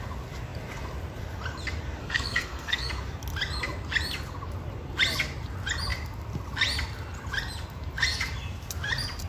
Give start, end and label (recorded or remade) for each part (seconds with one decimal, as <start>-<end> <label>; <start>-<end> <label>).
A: 0.0-2.0 recorded; 2.0-2.9 remade; 2.9-9.3 recorded